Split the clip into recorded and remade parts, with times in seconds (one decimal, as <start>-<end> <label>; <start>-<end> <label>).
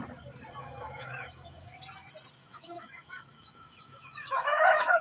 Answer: 0.0-0.6 recorded; 0.6-1.7 remade; 1.7-2.4 recorded; 2.4-5.0 remade